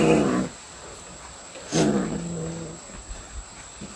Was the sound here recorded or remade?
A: recorded